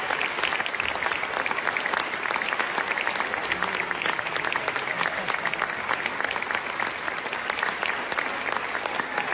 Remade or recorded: recorded